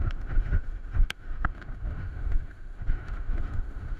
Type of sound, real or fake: fake